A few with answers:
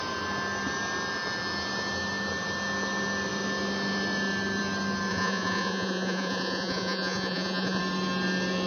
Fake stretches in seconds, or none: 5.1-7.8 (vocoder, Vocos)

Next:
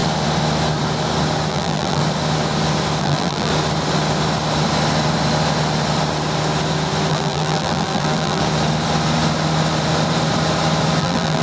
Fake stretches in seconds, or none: 1.5-2.0 (vocoder, BigVGAN v2); 3.0-3.5; 7.1-8.4; 11.0-11.4

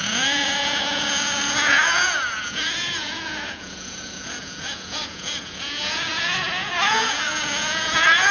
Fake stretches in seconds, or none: 0.0-8.3 (vocoder, Vocos)